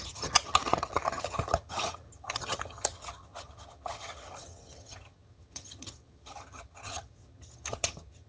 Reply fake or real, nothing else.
fake